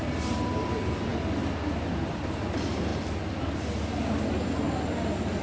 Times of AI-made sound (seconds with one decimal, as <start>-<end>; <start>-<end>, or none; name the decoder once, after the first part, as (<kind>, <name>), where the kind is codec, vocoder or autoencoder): 0.0-1.1 (vocoder, BigVGAN v2); 2.0-2.9